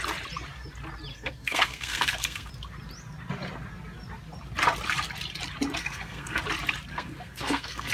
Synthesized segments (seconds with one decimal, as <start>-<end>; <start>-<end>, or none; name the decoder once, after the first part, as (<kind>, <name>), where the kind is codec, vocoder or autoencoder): 1.1-2.5 (codec, SNAC); 5.8-6.4; 6.9-7.9